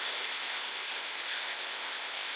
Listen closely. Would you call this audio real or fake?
fake